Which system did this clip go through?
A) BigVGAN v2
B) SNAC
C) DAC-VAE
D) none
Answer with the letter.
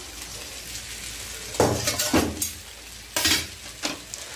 D